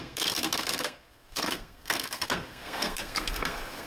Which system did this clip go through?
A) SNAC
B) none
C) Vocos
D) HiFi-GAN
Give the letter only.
A